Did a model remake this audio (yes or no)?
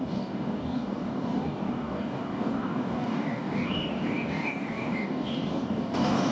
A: yes